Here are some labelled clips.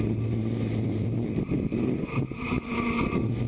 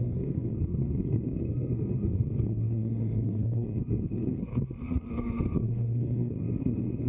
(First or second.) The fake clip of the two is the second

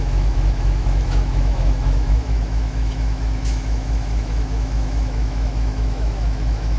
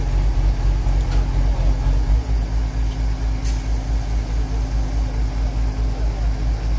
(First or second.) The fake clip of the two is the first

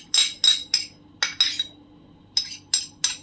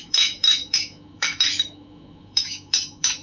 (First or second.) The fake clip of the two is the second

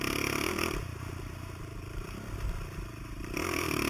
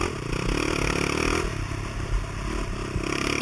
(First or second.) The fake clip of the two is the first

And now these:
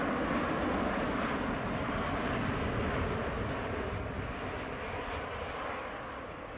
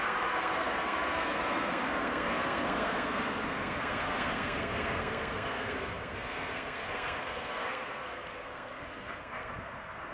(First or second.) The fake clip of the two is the second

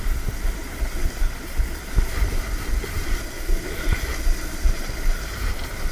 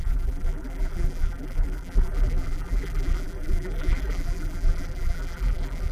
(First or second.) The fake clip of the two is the second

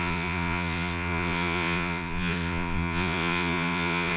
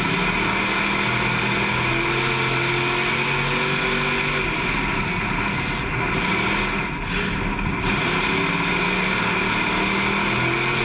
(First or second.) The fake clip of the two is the first